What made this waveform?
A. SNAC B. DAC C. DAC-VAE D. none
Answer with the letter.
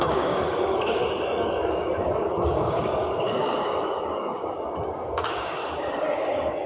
B